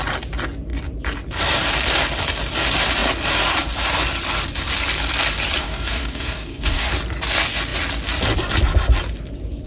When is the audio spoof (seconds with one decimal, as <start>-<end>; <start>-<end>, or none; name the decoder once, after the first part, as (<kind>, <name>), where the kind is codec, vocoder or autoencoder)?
5.6-6.9 (codec, DAC)